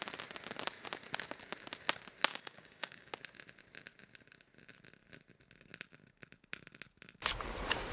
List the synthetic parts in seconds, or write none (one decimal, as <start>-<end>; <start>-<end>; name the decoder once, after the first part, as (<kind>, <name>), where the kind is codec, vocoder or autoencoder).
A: 2.3-3.1 (codec, DAC)